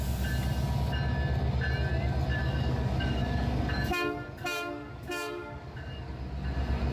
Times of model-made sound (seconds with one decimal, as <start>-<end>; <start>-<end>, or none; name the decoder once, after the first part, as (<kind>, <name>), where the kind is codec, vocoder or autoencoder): 2.3-6.1 (codec, DAC)